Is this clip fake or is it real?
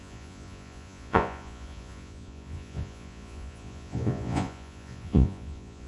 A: fake